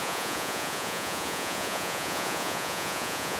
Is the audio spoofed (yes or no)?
yes